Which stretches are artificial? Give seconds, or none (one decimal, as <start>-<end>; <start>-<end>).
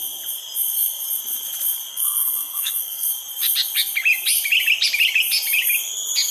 1.9-3.1